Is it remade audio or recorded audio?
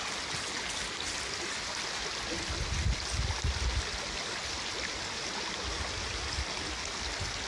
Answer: recorded